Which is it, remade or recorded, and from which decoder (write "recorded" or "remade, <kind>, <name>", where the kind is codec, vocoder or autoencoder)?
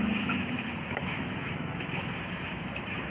remade, autoencoder, DAC-VAE